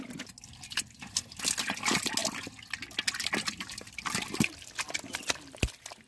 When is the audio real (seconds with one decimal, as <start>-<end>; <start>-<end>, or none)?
0.0-6.1